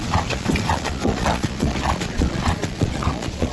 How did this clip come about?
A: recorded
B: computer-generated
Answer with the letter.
B